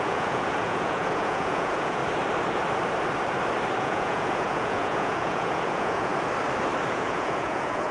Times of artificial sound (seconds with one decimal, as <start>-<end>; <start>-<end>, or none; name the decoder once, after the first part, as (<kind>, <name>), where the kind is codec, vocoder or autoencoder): 0.0-2.0 (vocoder, Vocos); 3.8-6.1; 6.9-7.9